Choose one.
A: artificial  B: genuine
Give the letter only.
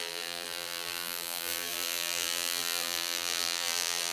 A